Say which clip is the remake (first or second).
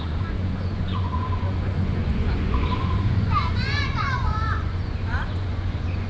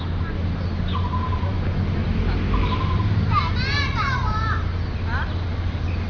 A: first